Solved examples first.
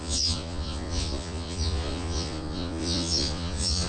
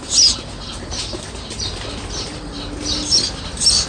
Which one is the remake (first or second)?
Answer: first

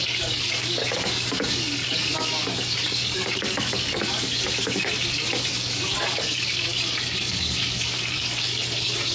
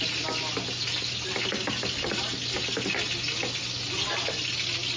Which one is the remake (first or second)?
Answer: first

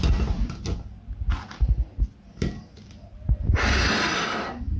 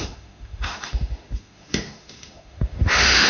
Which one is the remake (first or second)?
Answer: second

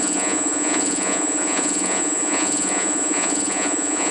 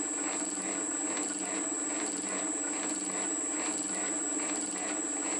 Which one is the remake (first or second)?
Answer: first